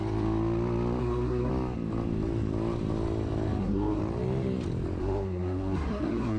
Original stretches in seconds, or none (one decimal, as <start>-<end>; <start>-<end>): 0.0-1.0; 1.5-3.6; 4.0-5.0